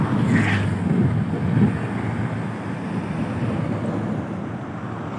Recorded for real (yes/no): yes